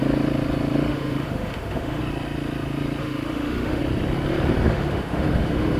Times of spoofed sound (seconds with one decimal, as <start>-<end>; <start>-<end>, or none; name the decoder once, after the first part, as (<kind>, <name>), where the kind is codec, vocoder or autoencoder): 0.9-2.0 (autoencoder, DAC-VAE); 3.0-3.8; 4.7-5.8